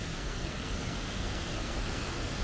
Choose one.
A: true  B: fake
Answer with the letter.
B